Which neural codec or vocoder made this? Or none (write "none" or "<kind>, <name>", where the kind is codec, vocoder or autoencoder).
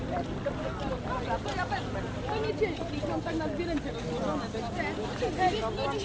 none